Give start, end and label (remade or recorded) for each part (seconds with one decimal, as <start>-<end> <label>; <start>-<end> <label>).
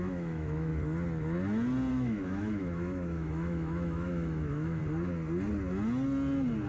0.0-0.7 remade; 0.7-1.9 recorded; 1.9-4.8 remade; 4.8-6.7 recorded